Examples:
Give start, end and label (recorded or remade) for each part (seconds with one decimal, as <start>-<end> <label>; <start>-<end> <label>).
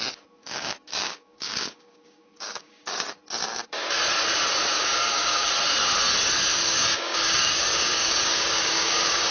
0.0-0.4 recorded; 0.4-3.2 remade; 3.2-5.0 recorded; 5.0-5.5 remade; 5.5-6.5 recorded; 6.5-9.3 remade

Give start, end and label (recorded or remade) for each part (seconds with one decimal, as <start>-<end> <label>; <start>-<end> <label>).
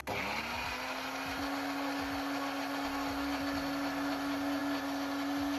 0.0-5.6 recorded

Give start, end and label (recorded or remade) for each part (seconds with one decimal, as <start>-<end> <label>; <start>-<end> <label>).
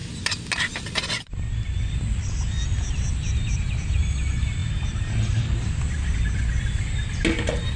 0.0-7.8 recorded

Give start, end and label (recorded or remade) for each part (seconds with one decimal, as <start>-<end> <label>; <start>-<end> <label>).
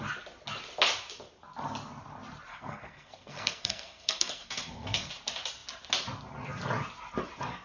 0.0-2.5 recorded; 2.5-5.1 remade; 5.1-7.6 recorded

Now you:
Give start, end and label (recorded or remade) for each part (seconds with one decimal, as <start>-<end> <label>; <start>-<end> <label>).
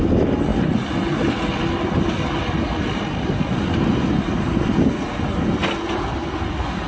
0.0-6.9 recorded